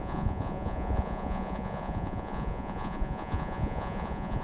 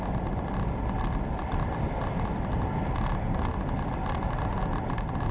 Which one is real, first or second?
second